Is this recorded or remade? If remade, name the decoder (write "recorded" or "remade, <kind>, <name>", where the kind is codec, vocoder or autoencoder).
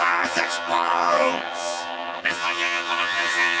remade, vocoder, HiFi-GAN